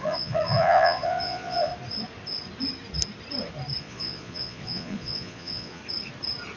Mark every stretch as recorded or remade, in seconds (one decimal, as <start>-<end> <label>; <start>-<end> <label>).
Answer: 0.0-1.7 remade; 1.7-3.8 recorded; 3.8-5.8 remade; 5.8-6.6 recorded